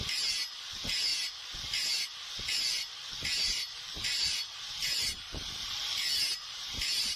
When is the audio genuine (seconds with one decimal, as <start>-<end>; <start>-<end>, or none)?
0.0-3.4; 6.0-6.4